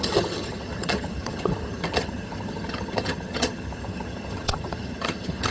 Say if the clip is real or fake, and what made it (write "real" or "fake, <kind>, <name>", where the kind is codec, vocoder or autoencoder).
fake, vocoder, HiFi-GAN